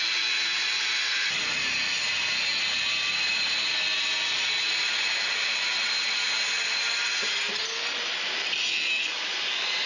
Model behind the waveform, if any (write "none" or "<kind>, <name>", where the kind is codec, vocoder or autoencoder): none